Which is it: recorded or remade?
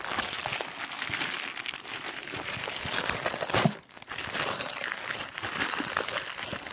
recorded